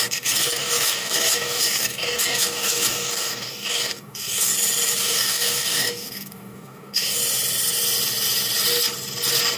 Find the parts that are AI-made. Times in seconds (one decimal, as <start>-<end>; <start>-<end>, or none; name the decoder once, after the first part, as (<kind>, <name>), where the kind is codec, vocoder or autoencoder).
0.0-4.5 (codec, DAC); 5.0-7.2